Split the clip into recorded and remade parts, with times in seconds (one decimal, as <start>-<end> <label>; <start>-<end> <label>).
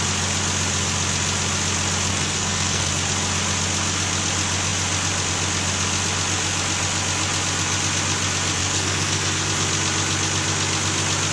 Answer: 0.0-2.1 recorded; 2.1-2.9 remade; 2.9-8.6 recorded; 8.6-9.5 remade; 9.5-11.3 recorded